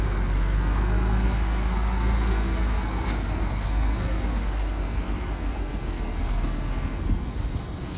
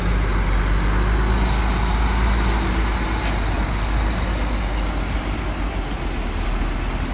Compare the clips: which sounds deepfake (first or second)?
first